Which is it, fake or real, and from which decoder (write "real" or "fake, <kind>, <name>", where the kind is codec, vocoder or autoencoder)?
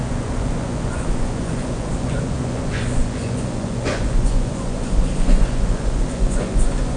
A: fake, vocoder, Vocos